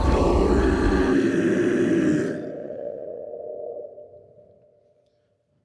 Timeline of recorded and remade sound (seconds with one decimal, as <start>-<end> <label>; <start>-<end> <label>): 0.0-2.6 recorded; 2.6-3.3 remade; 3.3-5.6 recorded